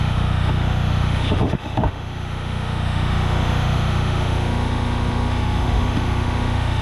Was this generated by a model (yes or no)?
yes